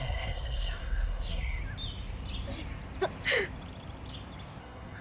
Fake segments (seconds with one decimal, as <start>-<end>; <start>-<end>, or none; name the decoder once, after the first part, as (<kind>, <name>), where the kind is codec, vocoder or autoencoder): 0.0-1.6 (codec, SNAC); 4.6-5.0